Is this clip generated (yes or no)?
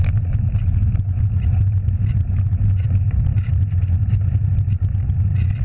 no